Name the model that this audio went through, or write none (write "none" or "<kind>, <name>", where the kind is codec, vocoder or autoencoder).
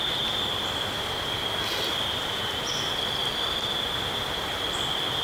none